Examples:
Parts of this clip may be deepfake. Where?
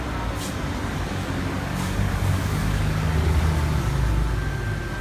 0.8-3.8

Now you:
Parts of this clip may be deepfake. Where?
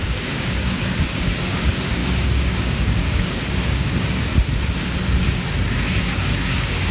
0.0-4.3; 6.2-6.9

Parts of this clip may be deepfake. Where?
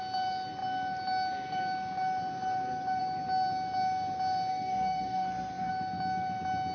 4.5-5.7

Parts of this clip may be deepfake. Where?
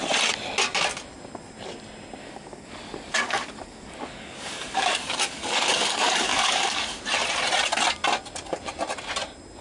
2.2-7.0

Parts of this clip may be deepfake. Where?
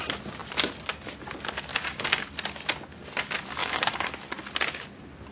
1.7-2.2; 3.6-4.1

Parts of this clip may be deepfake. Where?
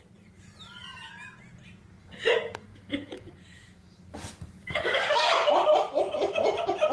2.0-5.3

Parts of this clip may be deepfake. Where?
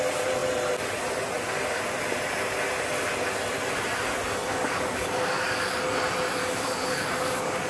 4.5-5.8; 6.4-7.7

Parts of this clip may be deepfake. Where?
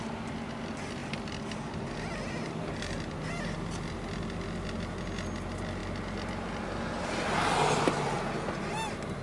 none